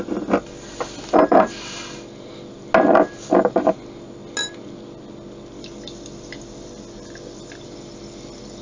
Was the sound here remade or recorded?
recorded